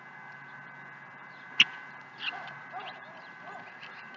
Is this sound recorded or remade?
recorded